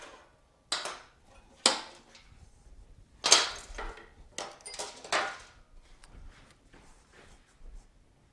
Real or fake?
real